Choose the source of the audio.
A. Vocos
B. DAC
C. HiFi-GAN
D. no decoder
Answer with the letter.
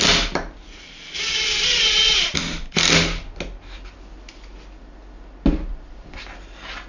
D